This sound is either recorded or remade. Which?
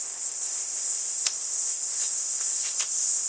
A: remade